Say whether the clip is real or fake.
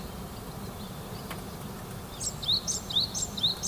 real